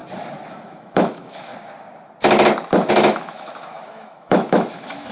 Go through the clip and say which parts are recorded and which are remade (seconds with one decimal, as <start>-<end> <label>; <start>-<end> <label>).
0.0-0.5 recorded; 0.5-1.5 remade; 1.5-2.9 recorded; 2.9-5.1 remade